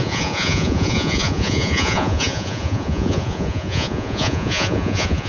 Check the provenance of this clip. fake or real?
fake